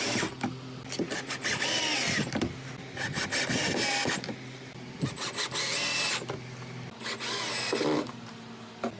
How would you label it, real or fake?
real